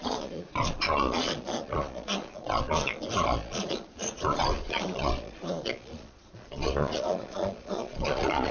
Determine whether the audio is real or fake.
fake